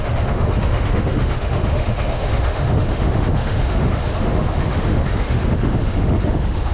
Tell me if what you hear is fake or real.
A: fake